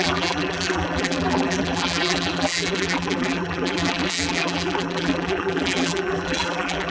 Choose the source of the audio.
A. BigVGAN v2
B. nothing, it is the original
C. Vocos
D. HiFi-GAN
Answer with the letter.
A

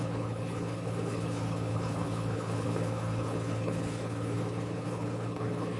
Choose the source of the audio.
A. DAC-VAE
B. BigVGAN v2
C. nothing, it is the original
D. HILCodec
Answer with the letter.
D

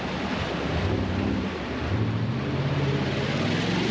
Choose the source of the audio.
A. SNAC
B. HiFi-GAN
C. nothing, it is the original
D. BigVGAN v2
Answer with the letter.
D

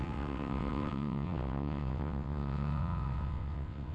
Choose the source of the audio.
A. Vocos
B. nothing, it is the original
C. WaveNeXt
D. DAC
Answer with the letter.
C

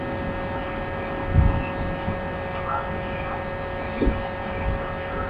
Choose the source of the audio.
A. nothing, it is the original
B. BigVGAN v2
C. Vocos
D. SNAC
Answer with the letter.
A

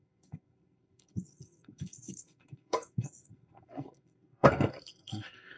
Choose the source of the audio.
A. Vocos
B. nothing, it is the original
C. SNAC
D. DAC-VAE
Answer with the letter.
C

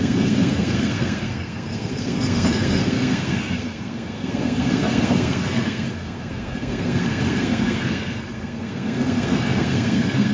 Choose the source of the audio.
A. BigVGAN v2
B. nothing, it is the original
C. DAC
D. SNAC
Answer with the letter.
D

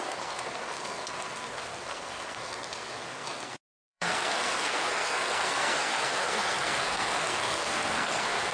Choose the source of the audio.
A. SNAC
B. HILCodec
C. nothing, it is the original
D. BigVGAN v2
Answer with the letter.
A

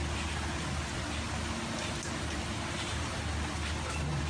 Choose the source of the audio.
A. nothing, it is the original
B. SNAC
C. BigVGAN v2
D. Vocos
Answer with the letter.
A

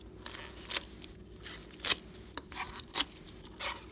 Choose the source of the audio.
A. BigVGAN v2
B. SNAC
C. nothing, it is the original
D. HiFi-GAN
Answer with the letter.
C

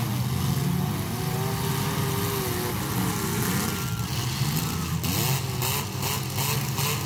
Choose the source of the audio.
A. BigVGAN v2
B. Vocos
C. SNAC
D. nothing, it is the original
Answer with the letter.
D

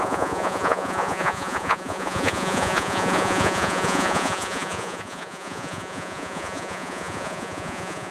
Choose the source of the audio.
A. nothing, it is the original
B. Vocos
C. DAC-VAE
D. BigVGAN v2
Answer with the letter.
B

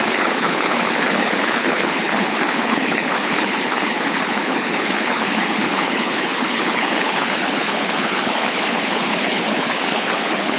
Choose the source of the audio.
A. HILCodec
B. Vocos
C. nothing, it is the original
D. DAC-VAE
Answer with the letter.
A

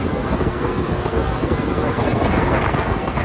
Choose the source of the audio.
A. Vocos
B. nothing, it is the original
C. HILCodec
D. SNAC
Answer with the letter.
D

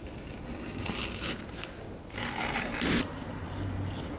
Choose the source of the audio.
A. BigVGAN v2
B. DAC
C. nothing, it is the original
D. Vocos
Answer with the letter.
C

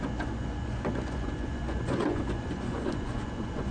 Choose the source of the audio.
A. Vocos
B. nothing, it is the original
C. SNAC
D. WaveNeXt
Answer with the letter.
A